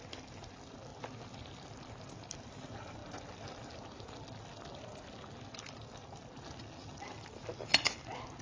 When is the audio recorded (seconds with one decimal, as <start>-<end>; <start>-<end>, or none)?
0.0-8.4